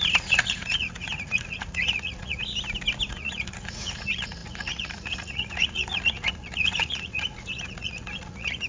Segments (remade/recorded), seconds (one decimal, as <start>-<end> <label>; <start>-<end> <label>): 0.0-2.4 remade; 2.4-3.1 recorded; 3.1-8.7 remade